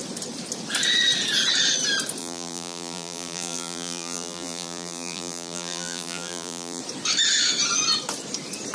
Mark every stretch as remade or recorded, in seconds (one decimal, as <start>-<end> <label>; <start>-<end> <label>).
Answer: 0.0-2.2 recorded; 2.2-6.8 remade; 6.8-8.7 recorded